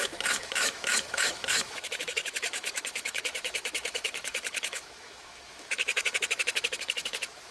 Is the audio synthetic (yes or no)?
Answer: yes